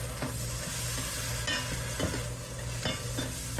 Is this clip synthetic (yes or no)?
no